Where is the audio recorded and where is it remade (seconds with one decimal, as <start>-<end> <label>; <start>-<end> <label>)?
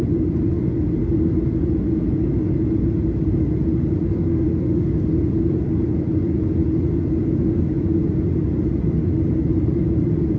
0.0-4.3 recorded; 4.3-4.9 remade; 4.9-10.4 recorded